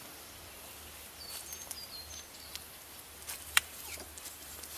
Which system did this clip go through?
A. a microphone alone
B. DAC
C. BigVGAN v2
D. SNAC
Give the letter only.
C